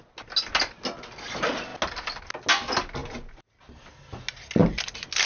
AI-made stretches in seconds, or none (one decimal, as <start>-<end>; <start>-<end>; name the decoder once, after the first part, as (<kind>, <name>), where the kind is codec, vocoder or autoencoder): none